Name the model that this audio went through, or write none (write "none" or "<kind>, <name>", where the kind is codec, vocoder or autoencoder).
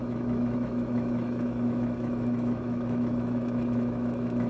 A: autoencoder, DAC-VAE